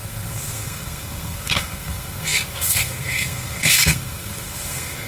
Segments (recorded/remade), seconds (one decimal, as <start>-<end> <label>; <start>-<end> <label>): 0.0-5.1 remade